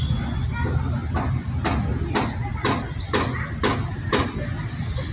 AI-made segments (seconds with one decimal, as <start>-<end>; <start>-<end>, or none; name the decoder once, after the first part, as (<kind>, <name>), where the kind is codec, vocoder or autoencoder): none